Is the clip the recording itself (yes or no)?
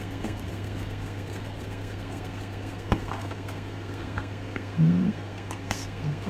no